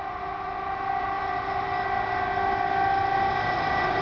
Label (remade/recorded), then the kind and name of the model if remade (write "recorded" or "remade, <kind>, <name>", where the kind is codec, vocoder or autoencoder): recorded